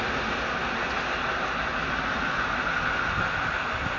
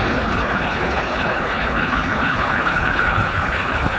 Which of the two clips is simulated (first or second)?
second